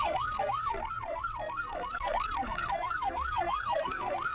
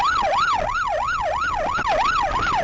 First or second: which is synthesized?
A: first